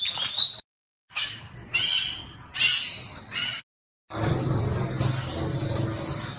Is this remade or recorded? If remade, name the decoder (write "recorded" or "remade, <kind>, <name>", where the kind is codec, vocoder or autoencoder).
recorded